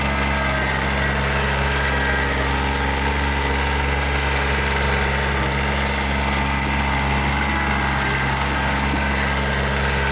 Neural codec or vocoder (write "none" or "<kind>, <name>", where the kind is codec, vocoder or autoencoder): none